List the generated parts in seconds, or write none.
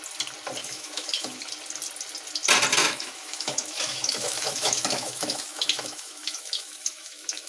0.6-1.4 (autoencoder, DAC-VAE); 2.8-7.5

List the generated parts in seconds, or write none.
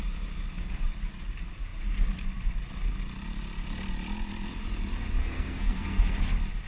5.2-6.2 (codec, SNAC)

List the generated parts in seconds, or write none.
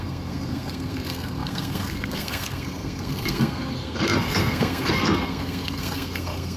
0.0-6.6 (codec, SNAC)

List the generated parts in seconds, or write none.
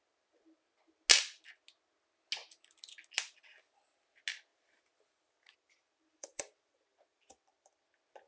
4.5-7.8 (vocoder, BigVGAN v2)